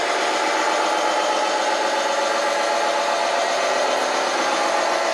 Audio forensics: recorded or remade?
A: recorded